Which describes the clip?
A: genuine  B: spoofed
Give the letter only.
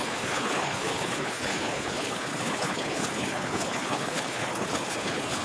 B